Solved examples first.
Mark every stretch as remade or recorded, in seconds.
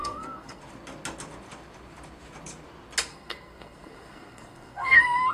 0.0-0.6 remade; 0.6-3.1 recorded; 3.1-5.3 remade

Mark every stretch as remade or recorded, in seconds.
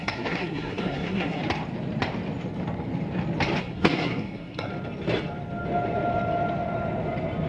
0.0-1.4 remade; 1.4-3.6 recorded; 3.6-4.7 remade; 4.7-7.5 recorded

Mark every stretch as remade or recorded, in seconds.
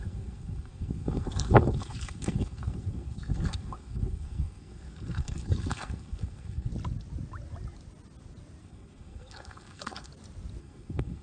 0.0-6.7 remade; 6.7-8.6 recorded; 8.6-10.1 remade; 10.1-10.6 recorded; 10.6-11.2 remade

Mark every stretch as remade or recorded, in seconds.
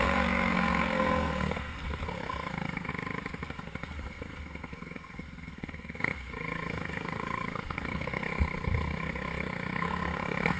0.0-2.9 remade; 2.9-3.5 recorded; 3.5-10.6 remade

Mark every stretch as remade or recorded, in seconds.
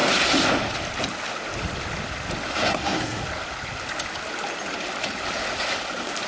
0.0-2.6 recorded; 2.6-3.2 remade; 3.2-6.3 recorded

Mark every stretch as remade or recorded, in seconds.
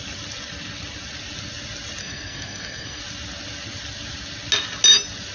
0.0-2.0 recorded; 2.0-3.0 remade; 3.0-5.3 recorded